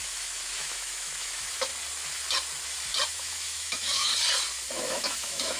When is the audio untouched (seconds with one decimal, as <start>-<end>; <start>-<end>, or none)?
1.7-3.1; 4.1-4.7